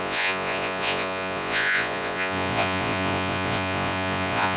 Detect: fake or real fake